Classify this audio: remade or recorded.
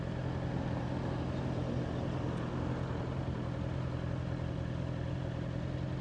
recorded